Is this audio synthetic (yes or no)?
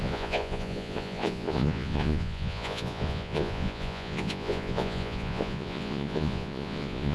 yes